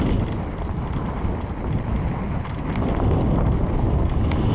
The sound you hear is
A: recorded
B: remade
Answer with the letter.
A